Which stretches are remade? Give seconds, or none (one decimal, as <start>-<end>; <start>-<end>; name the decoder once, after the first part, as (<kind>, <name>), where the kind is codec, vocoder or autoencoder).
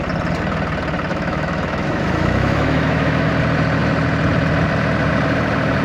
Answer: 1.1-3.3 (autoencoder, DAC-VAE)